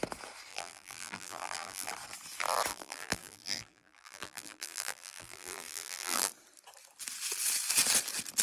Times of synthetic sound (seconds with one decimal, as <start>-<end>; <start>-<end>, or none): 0.5-1.9; 2.7-6.3